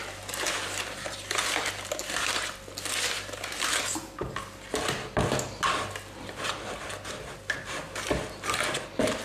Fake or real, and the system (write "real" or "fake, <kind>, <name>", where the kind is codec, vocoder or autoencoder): real